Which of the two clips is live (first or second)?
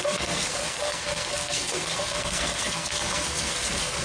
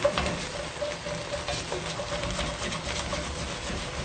second